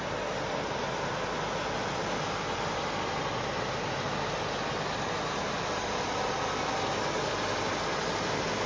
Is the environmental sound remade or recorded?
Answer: recorded